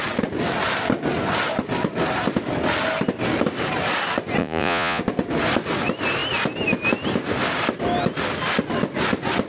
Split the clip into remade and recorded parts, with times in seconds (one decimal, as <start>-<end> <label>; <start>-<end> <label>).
0.0-4.4 recorded; 4.4-5.0 remade; 5.0-9.5 recorded